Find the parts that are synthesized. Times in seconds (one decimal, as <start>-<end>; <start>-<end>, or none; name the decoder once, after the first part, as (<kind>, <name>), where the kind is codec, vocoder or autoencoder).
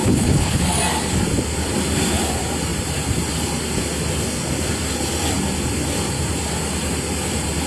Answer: 0.0-0.6 (codec, HILCodec)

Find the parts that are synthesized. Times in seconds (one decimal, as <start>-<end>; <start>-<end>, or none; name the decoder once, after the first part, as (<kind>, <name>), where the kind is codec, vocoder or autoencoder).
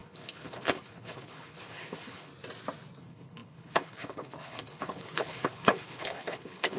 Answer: 0.0-2.3 (codec, HILCodec); 3.0-6.8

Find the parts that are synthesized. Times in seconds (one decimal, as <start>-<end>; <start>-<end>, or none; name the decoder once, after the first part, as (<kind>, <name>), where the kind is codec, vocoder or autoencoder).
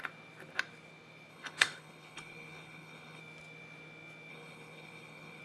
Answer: 1.3-3.2 (codec, HILCodec); 4.3-5.4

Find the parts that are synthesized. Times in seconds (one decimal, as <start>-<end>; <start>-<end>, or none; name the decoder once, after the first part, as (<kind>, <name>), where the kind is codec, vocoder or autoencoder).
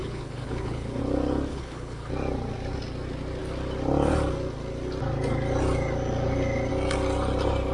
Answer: 0.0-1.0 (codec, HILCodec); 1.5-2.1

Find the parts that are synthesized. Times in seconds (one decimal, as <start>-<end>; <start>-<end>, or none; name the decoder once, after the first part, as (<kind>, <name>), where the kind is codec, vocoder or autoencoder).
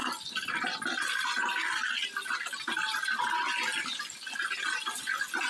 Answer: none